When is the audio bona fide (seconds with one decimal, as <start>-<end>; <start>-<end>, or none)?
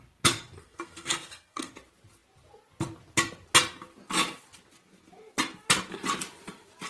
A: 0.0-0.6; 1.7-6.9